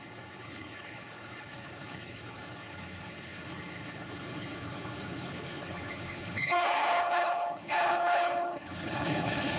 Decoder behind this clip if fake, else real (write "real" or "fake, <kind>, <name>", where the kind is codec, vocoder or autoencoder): fake, codec, HILCodec